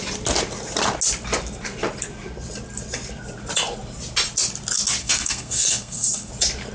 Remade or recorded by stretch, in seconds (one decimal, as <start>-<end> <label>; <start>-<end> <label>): 0.0-5.0 recorded; 5.0-6.3 remade; 6.3-6.7 recorded